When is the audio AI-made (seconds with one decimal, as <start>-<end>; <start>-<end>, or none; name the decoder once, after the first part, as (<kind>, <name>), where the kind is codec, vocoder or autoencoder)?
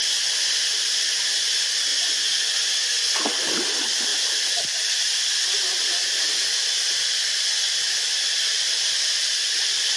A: 1.9-3.2 (vocoder, Vocos)